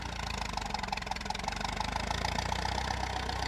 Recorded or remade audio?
recorded